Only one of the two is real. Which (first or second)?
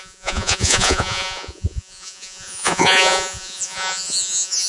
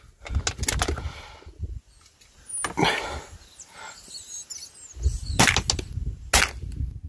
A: second